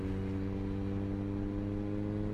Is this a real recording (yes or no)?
yes